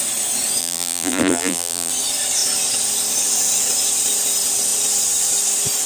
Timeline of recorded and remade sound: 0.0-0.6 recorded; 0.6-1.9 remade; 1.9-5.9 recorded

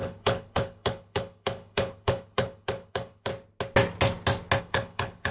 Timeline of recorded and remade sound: 0.0-3.3 remade; 3.3-4.6 recorded; 4.6-5.3 remade

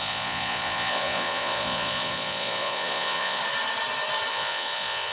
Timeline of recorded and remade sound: 0.0-3.4 remade; 3.4-4.3 recorded; 4.3-5.1 remade